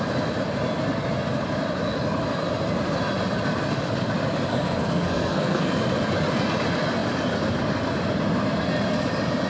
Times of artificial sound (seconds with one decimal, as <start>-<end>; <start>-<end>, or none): 4.5-5.7